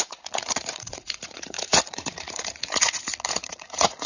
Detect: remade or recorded remade